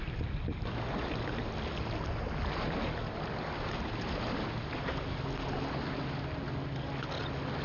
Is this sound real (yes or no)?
yes